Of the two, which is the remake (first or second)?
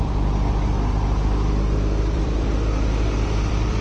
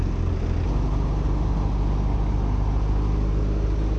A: first